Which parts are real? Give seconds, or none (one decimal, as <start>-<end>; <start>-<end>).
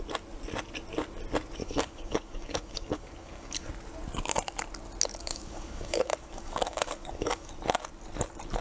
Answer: 0.0-1.6; 3.7-5.2; 7.5-8.6